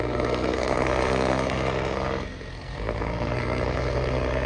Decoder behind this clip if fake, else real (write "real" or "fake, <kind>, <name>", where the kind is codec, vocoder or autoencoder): fake, codec, SNAC